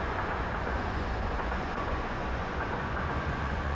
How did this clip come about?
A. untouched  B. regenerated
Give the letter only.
B